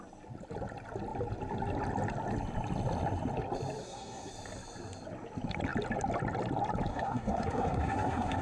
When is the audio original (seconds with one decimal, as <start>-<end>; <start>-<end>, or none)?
0.0-3.8; 4.3-6.9